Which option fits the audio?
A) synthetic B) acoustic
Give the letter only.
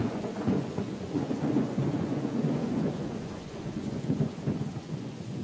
A